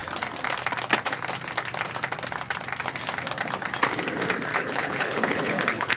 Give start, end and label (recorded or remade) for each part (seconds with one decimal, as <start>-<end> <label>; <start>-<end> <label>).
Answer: 0.0-4.5 recorded; 4.5-6.0 remade